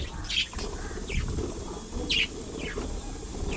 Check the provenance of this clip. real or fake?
real